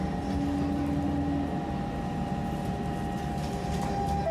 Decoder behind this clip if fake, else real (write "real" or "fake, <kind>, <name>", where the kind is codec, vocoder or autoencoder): real